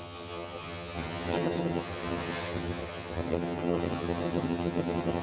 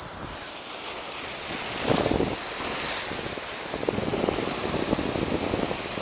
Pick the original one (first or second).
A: second